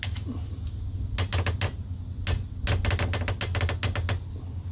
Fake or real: real